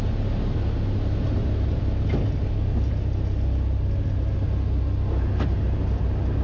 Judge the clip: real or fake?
real